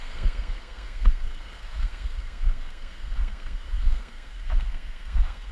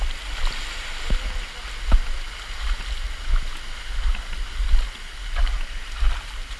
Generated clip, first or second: first